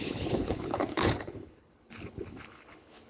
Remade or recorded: remade